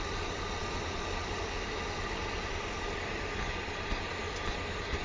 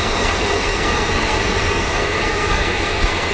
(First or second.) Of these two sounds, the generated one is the second